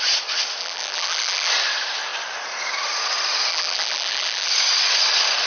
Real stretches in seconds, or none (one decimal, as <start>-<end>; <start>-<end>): 0.0-0.6; 1.5-3.5; 4.5-5.5